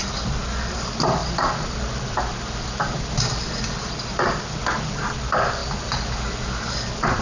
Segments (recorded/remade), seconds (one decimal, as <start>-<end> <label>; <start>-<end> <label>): 0.0-1.2 recorded; 1.2-3.6 remade; 3.6-7.2 recorded